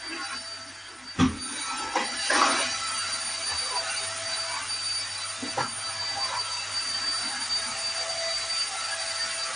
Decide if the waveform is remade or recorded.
recorded